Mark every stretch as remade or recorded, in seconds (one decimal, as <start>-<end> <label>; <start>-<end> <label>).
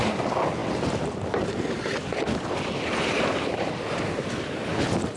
0.0-5.2 recorded